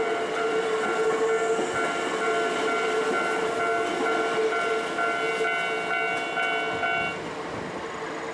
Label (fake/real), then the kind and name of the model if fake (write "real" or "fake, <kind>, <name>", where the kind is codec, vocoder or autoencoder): real